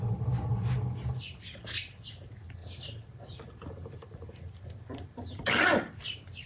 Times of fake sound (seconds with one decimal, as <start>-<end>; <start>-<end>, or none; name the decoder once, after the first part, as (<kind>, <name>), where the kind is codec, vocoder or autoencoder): none